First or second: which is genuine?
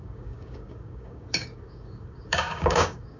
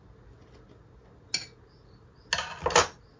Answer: second